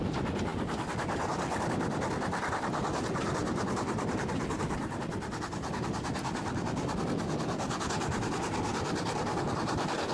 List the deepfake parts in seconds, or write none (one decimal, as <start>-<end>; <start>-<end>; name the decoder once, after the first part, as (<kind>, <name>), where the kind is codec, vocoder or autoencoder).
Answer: 3.4-5.0 (vocoder, BigVGAN v2)